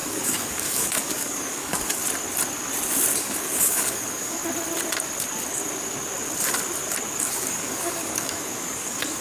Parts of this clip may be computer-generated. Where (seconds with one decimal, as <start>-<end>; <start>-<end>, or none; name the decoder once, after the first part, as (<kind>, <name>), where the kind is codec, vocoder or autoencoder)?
0.0-2.0 (codec, DAC); 3.2-4.4; 7.2-9.2